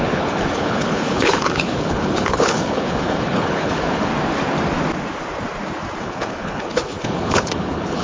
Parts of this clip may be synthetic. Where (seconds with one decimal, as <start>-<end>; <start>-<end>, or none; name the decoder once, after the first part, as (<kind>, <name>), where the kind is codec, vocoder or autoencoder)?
0.0-4.1 (codec, HILCodec); 6.0-8.0